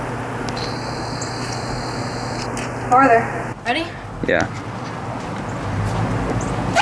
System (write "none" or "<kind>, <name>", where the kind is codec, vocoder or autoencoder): none